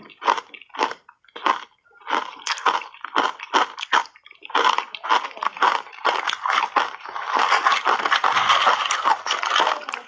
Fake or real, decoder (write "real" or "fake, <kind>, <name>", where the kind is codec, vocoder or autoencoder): real